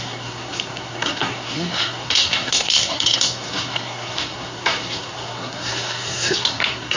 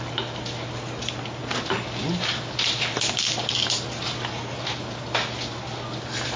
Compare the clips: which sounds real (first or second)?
second